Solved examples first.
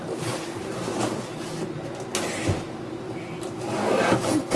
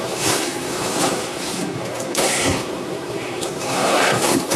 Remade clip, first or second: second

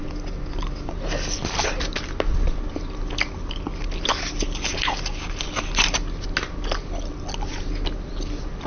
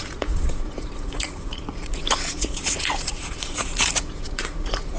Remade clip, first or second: second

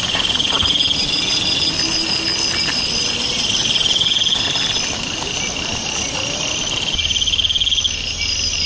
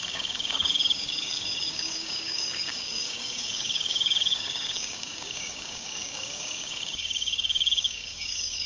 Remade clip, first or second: second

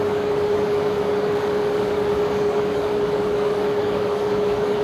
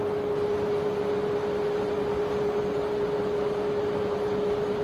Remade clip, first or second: first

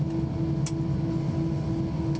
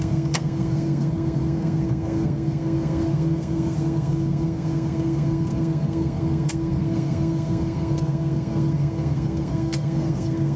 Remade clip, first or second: second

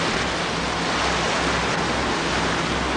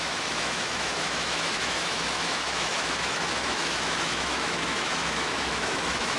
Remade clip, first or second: second